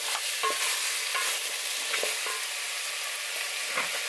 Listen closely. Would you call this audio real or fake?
real